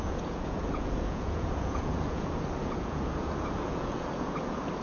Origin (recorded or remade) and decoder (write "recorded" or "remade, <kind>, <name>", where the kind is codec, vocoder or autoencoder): remade, vocoder, Vocos